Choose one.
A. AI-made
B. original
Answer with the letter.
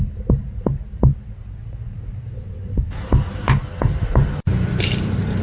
B